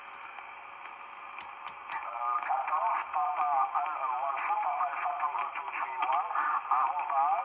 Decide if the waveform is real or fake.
real